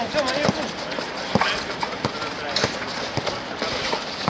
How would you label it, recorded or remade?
recorded